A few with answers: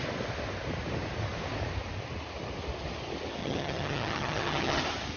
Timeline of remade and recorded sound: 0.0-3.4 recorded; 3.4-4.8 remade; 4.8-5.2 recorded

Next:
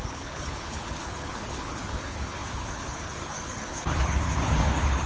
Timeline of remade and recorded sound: 0.0-5.1 remade

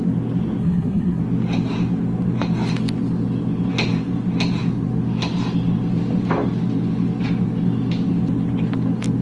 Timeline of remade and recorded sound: 0.0-0.6 recorded; 0.6-1.2 remade; 1.2-9.2 recorded

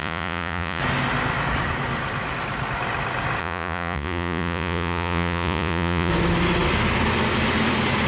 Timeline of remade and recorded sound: 0.0-0.8 remade; 0.8-3.4 recorded; 3.4-6.1 remade; 6.1-8.1 recorded

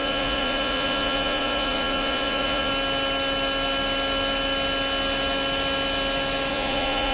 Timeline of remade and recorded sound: 0.0-2.7 remade; 2.7-6.5 recorded; 6.5-7.1 remade